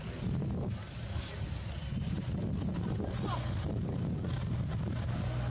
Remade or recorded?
recorded